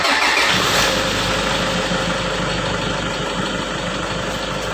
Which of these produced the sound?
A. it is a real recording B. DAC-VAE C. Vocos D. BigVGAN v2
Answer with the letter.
A